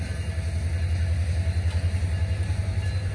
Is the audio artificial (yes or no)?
no